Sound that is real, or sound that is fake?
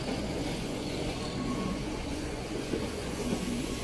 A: fake